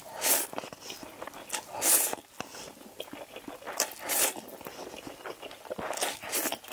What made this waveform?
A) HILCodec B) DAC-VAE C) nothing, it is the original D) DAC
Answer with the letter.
C